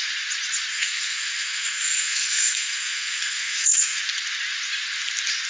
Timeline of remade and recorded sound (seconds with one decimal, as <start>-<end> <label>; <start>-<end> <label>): 0.0-0.7 recorded; 0.7-4.0 remade; 4.0-5.5 recorded